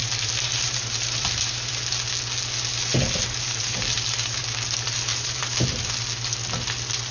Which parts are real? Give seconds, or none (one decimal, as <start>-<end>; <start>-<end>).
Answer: 1.7-2.9; 4.4-5.1; 5.6-7.1